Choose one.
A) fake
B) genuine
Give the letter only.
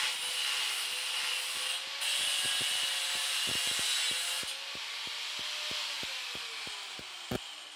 B